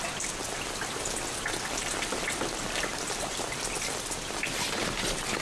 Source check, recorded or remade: recorded